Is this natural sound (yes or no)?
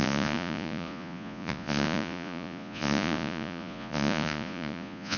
no